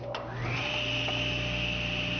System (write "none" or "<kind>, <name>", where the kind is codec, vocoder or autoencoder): none